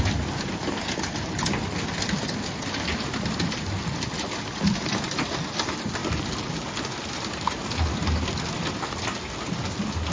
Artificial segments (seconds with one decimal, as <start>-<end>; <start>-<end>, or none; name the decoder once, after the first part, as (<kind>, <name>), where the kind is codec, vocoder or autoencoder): none